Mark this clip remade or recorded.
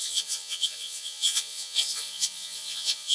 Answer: remade